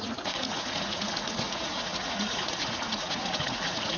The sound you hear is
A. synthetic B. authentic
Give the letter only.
A